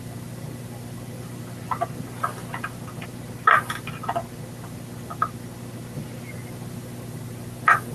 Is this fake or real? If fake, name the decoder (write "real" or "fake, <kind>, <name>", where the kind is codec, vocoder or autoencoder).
real